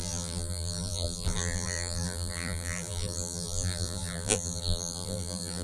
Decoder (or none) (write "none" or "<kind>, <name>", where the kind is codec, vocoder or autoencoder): vocoder, BigVGAN v2